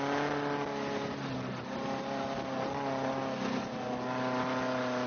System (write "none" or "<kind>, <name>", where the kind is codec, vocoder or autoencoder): none